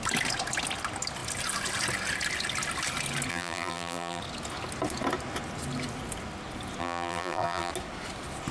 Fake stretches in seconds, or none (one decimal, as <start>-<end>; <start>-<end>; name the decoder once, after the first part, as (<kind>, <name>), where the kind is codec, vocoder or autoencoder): 3.3-4.2 (vocoder, BigVGAN v2); 6.8-7.7